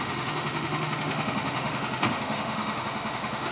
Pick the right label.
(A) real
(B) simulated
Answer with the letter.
B